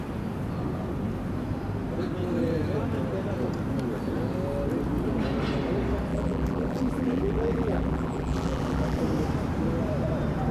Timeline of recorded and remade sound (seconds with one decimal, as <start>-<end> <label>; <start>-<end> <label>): 0.0-6.1 recorded; 6.1-9.0 remade; 9.0-10.5 recorded